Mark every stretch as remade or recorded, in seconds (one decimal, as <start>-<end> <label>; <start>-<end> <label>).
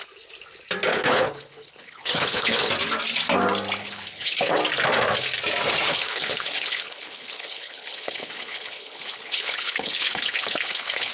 0.0-0.9 recorded; 0.9-2.7 remade; 2.7-3.8 recorded; 3.8-4.6 remade; 4.6-5.9 recorded; 5.9-11.1 remade